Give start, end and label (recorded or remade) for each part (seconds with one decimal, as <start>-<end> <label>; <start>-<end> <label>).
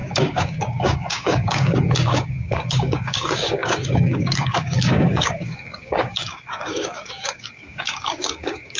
0.0-8.8 remade